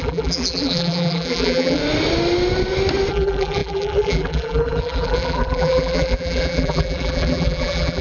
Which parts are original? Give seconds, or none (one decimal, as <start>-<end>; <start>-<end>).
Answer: 1.8-3.1